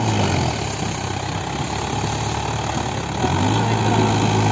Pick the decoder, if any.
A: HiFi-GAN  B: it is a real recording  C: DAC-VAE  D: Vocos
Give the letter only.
B